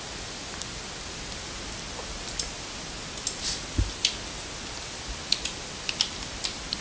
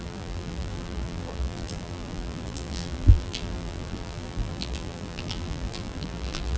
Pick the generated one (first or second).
second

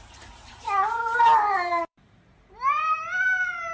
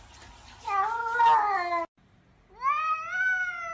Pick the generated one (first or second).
first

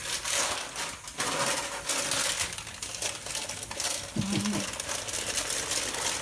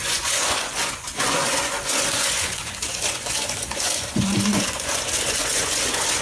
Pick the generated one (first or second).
second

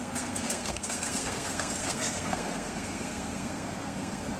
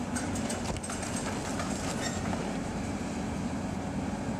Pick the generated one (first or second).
first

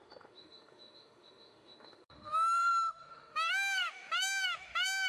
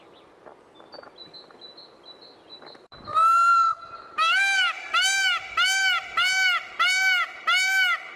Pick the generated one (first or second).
first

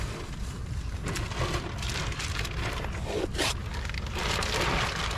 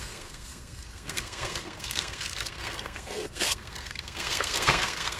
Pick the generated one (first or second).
second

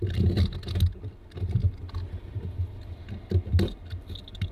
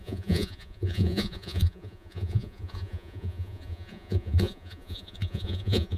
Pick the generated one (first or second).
second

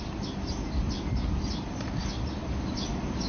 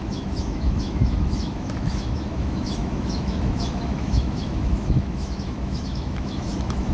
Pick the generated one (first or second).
second